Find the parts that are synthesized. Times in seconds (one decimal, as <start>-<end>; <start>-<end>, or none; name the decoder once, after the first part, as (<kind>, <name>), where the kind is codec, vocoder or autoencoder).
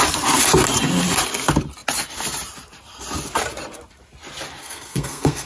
4.6-5.5 (codec, SNAC)